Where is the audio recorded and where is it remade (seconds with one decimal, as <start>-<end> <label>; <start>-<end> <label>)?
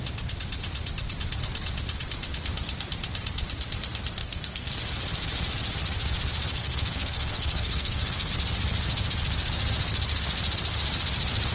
0.0-4.2 recorded; 4.2-4.7 remade; 4.7-6.6 recorded; 6.6-8.3 remade; 8.3-11.5 recorded